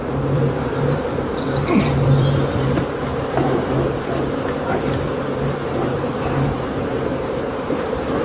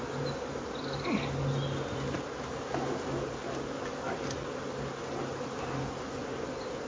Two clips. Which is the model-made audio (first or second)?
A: first